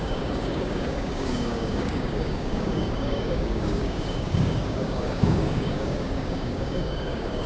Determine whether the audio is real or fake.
fake